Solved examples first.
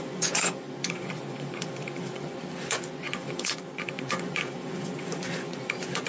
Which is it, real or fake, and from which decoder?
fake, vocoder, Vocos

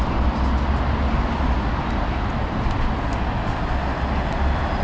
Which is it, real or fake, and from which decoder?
real